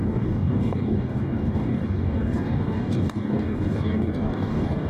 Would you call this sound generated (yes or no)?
yes